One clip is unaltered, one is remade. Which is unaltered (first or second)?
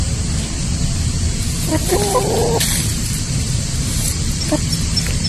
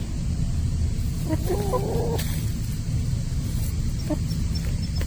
second